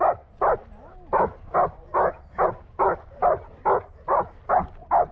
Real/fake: real